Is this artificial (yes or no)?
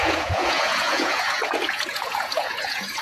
yes